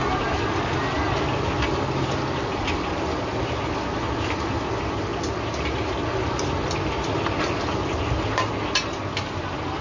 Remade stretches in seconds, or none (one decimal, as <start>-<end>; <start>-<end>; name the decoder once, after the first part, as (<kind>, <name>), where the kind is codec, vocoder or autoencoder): none